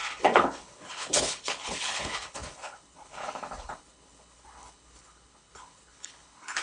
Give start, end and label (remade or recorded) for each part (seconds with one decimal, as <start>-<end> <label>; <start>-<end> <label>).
0.0-6.6 remade